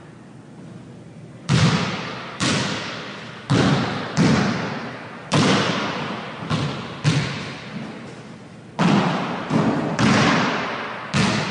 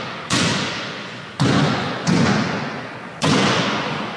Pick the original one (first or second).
first